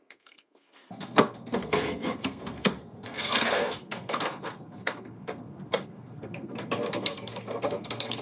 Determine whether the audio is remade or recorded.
remade